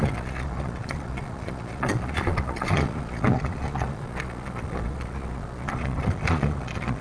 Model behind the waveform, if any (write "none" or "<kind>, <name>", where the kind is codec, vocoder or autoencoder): vocoder, Vocos